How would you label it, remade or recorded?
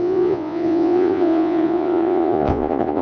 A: remade